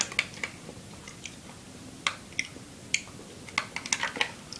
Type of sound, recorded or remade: recorded